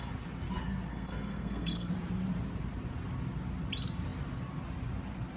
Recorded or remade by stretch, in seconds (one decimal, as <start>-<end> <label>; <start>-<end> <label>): 0.0-0.9 recorded; 0.9-1.9 remade; 1.9-5.4 recorded